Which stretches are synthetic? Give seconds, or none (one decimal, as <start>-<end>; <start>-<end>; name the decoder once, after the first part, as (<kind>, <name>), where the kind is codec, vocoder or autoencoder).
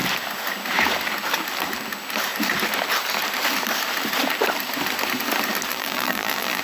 5.7-6.6 (vocoder, BigVGAN v2)